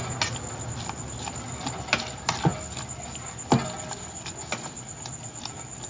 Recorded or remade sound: recorded